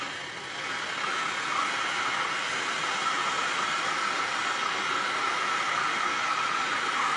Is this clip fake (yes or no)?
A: no